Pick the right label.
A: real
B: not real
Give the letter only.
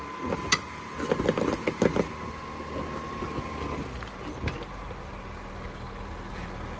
A